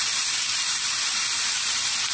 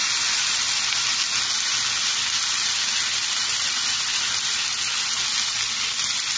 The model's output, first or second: first